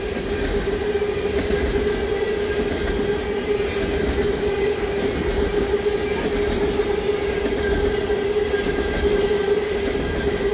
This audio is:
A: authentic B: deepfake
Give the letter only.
A